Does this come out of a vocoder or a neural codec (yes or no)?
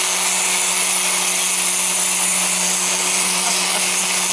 no